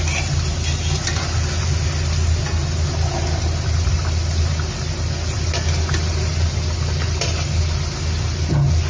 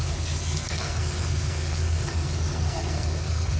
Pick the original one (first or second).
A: first